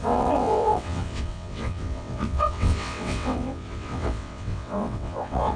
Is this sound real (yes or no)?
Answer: no